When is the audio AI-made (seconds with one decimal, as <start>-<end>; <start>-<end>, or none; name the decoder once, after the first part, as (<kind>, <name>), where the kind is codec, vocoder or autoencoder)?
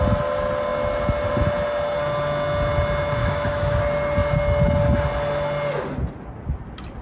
3.2-3.8 (autoencoder, DAC-VAE)